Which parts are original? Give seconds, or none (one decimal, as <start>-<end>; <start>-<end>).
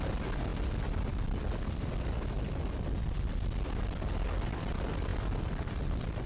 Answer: 0.0-6.3